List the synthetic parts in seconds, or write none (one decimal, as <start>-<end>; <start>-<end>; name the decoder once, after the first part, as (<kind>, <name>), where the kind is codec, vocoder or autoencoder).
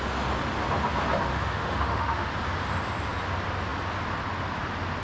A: 1.3-2.3 (autoencoder, DAC-VAE)